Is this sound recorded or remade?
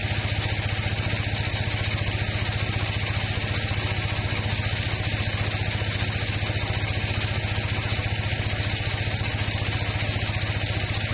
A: recorded